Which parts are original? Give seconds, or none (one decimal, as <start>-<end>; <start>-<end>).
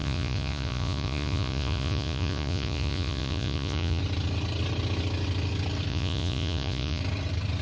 4.0-5.9; 7.0-7.6